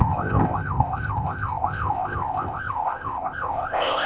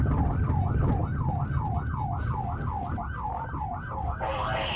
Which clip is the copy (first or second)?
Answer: first